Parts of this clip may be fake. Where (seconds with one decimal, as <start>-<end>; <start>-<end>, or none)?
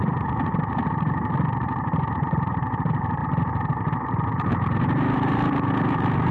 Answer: 0.0-3.2; 4.3-6.3